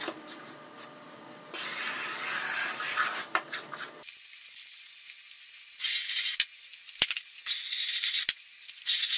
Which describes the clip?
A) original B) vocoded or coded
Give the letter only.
A